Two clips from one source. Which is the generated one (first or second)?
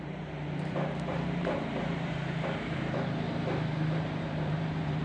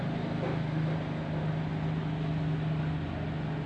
first